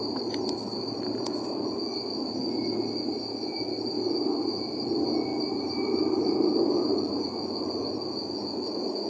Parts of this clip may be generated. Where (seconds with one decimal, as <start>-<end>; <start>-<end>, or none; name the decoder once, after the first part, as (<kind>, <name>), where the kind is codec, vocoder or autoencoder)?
5.3-7.2 (vocoder, BigVGAN v2)